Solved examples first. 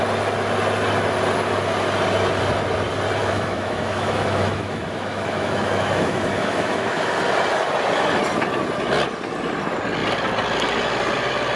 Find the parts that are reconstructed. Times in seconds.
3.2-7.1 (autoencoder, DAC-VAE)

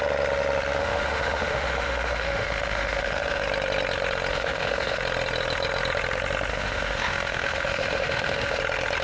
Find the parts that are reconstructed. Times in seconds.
0.8-3.4 (autoencoder, DAC-VAE); 4.3-5.0; 6.5-8.6

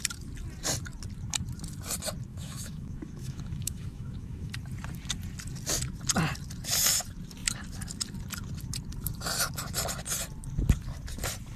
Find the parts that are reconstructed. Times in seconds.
2.3-4.5 (autoencoder, DAC-VAE)

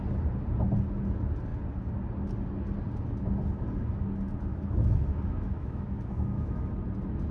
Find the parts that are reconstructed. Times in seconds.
4.5-6.7 (autoencoder, DAC-VAE)

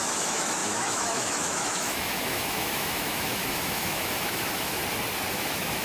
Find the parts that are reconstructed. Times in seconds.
0.0-4.8 (autoencoder, DAC-VAE); 5.3-5.8